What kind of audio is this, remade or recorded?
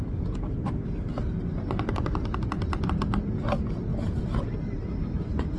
recorded